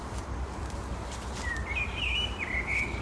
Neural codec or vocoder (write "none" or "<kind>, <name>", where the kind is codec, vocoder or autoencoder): none